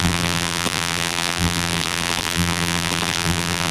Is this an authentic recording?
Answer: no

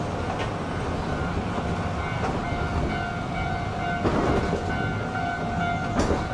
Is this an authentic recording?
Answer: yes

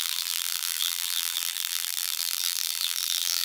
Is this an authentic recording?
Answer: no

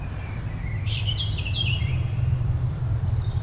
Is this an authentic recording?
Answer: no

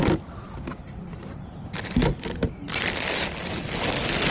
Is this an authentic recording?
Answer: yes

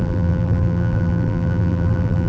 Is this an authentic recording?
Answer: no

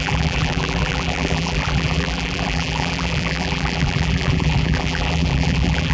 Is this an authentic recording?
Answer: no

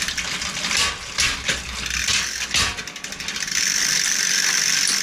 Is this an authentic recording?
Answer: yes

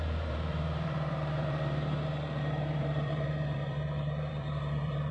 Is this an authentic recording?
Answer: no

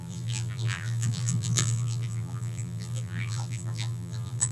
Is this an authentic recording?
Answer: no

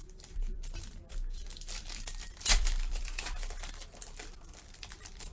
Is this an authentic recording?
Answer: no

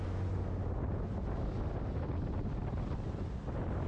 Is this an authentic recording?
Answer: yes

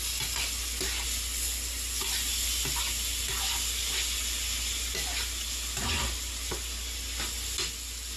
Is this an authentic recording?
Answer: yes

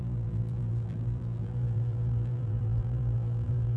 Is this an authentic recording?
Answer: no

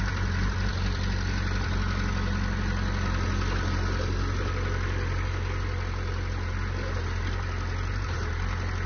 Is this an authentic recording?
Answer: yes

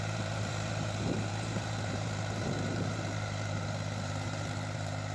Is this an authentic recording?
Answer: no